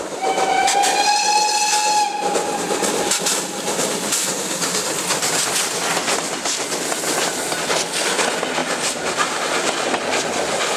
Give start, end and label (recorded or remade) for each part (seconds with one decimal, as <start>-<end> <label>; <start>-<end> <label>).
0.0-8.6 recorded; 8.6-10.0 remade; 10.0-10.8 recorded